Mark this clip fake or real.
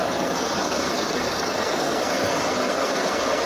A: fake